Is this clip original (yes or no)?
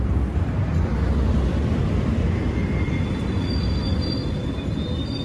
yes